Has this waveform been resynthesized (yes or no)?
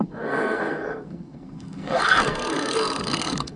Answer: yes